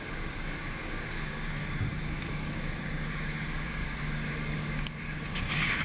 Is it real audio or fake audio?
fake